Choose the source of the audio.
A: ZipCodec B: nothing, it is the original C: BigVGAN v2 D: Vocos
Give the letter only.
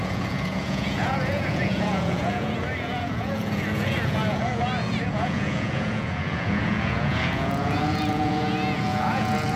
D